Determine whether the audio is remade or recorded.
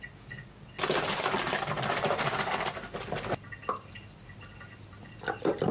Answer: recorded